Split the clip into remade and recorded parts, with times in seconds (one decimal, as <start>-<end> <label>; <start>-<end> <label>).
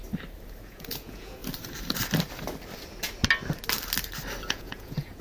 0.0-0.6 recorded; 0.6-1.4 remade; 1.4-4.5 recorded; 4.5-5.2 remade